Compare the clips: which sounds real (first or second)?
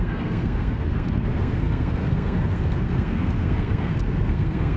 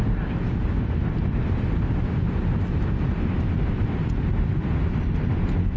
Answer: second